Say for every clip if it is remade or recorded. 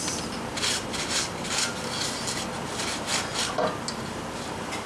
recorded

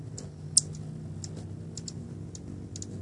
recorded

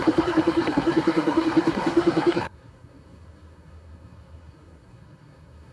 remade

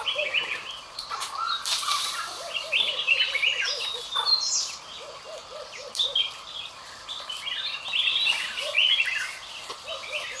recorded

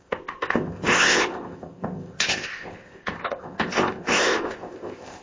remade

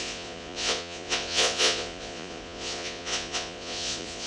remade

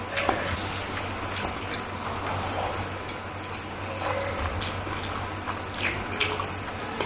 recorded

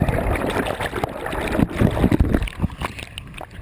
recorded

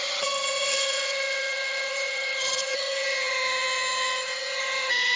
remade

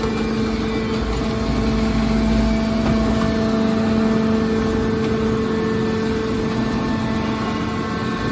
recorded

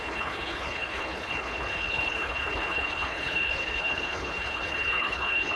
remade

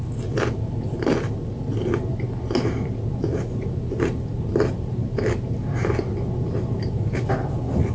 recorded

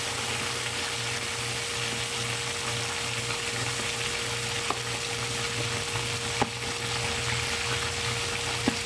recorded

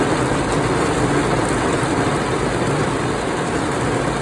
recorded